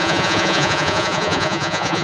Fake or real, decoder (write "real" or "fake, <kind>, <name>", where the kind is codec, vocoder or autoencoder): fake, vocoder, Vocos